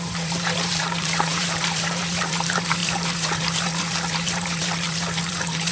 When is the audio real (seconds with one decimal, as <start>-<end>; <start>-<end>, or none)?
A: none